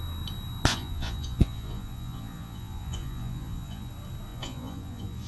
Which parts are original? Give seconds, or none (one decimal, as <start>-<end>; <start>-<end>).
0.0-0.7; 3.9-4.3